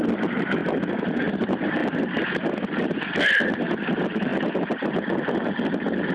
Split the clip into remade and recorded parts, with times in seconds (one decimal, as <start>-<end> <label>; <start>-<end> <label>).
0.0-0.6 remade; 0.6-1.3 recorded; 1.3-1.8 remade; 1.8-3.5 recorded; 3.5-4.3 remade; 4.3-4.8 recorded; 4.8-6.1 remade